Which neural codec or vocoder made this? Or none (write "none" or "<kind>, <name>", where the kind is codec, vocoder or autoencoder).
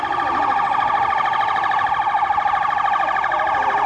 none